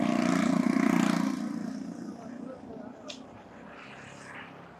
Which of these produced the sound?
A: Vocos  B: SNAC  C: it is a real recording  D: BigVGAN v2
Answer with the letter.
C